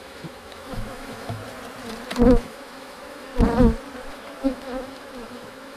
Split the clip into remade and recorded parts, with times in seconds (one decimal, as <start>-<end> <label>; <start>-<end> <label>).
0.0-1.4 remade; 1.4-2.3 recorded; 2.3-3.3 remade; 3.3-4.1 recorded; 4.1-5.8 remade